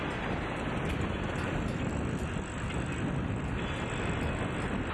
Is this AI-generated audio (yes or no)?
no